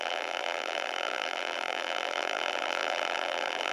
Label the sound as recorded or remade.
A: remade